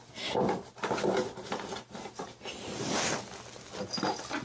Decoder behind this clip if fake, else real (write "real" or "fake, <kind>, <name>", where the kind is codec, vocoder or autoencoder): real